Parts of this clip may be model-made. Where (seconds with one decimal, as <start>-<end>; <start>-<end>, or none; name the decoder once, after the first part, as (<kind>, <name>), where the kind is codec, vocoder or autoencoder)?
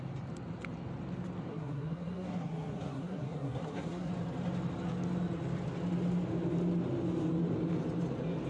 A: 1.5-4.1 (codec, SNAC)